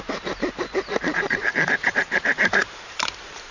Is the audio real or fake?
fake